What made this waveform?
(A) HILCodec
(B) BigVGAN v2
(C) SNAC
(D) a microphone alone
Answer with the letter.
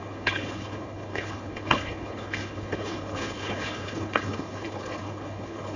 A